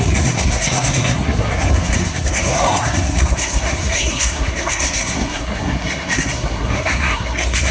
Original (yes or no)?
no